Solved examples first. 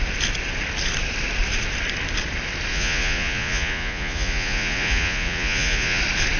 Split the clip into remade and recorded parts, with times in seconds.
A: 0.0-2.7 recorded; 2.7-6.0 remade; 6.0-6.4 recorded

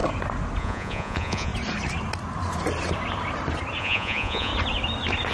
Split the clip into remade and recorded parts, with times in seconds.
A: 0.0-0.6 recorded; 0.6-1.5 remade; 1.5-3.8 recorded; 3.8-4.5 remade; 4.5-5.3 recorded

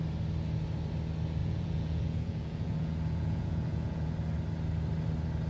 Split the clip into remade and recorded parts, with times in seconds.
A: 0.0-1.4 recorded; 1.4-4.1 remade; 4.1-5.5 recorded

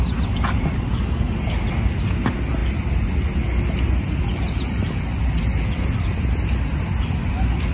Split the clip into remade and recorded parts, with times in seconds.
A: 0.0-7.7 recorded

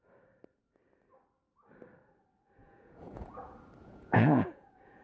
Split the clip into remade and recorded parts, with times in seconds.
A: 0.0-2.6 recorded; 2.6-3.4 remade; 3.4-3.8 recorded; 3.8-5.0 remade

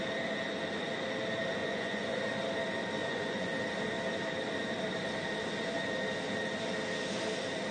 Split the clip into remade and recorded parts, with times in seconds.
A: 0.0-1.6 recorded; 1.6-2.2 remade; 2.2-3.0 recorded; 3.0-3.6 remade; 3.6-7.7 recorded